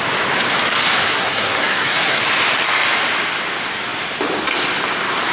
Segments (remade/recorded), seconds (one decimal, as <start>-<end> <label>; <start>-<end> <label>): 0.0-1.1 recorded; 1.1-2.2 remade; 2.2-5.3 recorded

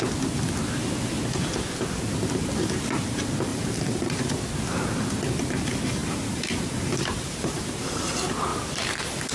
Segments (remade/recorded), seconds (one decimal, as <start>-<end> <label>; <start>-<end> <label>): 0.0-3.5 recorded; 3.5-4.4 remade; 4.4-6.0 recorded; 6.0-7.9 remade; 7.9-9.3 recorded

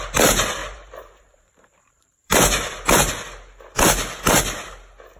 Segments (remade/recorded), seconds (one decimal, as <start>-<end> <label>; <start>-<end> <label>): 0.0-0.6 recorded; 0.6-3.1 remade; 3.1-5.2 recorded